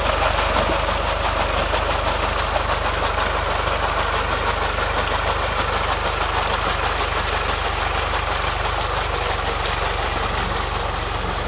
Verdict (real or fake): real